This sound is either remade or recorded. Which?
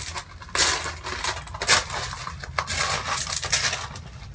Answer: recorded